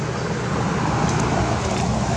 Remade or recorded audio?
recorded